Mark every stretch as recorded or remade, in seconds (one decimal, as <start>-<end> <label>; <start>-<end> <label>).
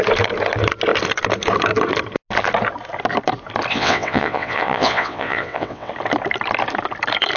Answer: 0.0-3.7 recorded; 3.7-5.9 remade; 5.9-7.4 recorded